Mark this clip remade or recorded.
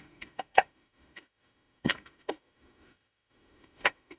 remade